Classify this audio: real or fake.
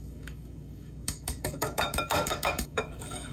fake